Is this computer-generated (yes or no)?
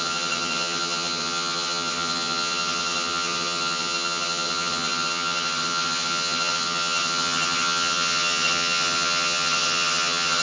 yes